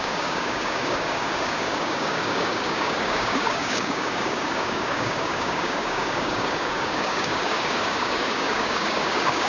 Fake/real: fake